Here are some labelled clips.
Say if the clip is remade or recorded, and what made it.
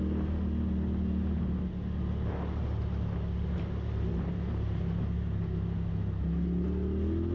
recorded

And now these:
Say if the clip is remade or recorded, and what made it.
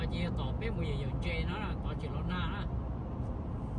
recorded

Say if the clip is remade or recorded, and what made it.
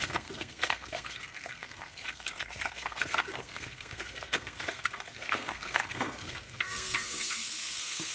remade, codec, SNAC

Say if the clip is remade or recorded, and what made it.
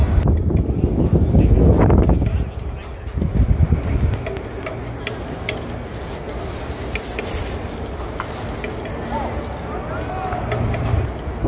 recorded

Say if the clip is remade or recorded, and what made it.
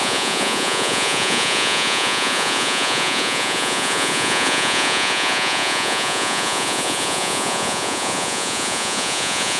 remade, vocoder, Vocos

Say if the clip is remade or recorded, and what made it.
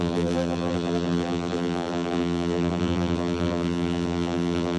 remade, vocoder, BigVGAN v2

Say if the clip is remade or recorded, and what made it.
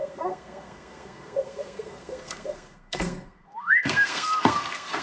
remade, codec, SNAC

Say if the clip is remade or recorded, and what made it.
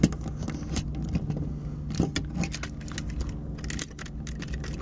recorded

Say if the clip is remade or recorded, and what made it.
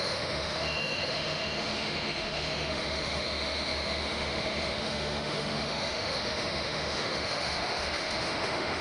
remade, autoencoder, DAC-VAE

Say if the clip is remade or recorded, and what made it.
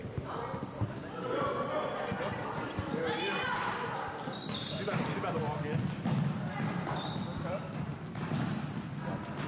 recorded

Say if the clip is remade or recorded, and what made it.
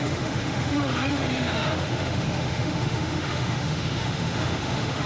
remade, autoencoder, DAC-VAE